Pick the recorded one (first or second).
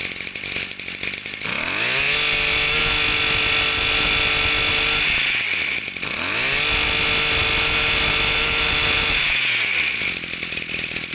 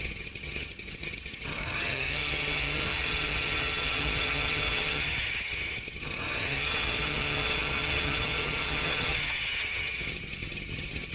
first